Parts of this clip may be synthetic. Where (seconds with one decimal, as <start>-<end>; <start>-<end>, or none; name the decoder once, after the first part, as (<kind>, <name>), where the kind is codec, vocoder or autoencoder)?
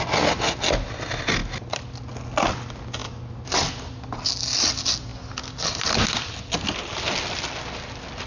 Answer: none